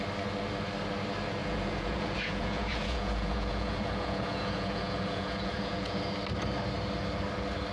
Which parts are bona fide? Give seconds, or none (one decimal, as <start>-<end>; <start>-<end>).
0.0-1.4; 6.0-7.7